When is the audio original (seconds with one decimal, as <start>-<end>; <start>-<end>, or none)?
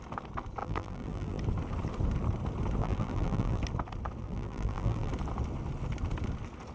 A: 0.0-0.6; 1.4-2.8; 3.6-4.2; 5.1-6.7